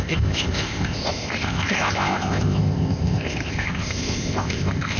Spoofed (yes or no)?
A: yes